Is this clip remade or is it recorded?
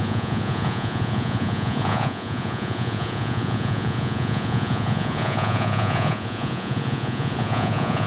remade